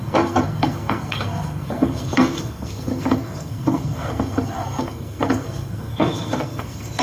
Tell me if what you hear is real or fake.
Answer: fake